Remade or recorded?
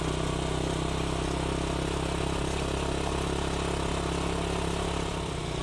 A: recorded